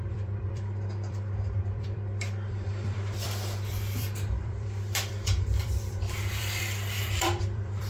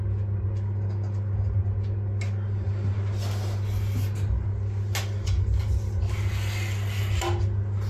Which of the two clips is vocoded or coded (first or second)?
first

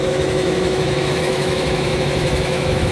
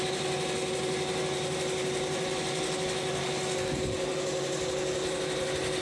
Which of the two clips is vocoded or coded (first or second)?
first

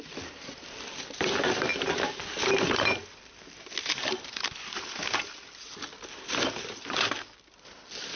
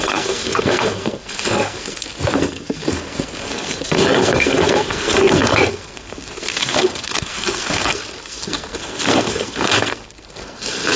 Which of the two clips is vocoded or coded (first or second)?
second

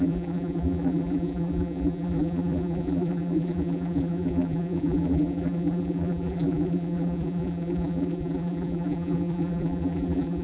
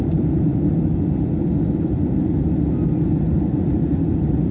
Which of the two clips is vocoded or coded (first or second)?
first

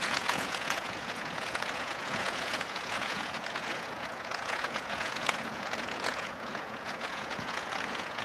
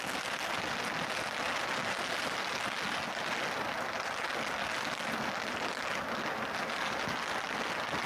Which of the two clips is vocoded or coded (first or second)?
first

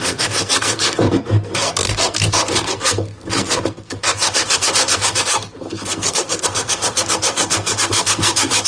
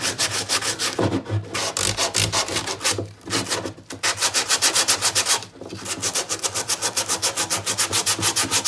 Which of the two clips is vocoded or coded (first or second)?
first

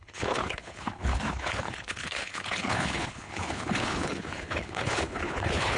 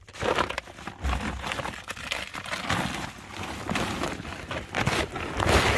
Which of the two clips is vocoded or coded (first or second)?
first